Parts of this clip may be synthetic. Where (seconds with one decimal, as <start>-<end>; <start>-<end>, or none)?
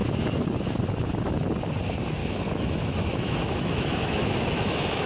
2.2-5.1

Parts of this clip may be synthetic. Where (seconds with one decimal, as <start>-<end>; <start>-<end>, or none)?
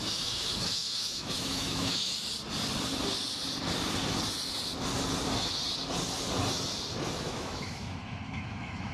0.0-2.1; 7.2-8.9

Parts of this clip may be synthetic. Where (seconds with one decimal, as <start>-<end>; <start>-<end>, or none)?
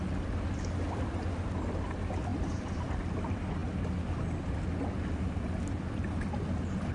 none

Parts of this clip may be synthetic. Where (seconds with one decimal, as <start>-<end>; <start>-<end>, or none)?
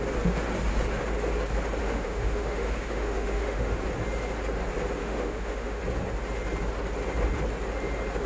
1.8-3.8; 5.0-5.8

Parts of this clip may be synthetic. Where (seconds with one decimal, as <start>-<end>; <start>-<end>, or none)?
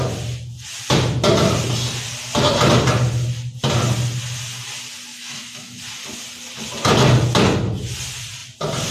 5.1-5.8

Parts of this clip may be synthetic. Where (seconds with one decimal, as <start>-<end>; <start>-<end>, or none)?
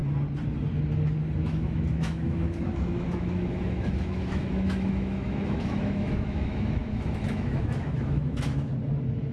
1.4-8.7